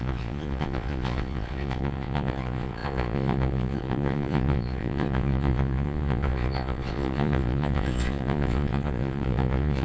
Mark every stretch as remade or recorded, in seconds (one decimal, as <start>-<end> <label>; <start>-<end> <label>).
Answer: 0.0-9.8 remade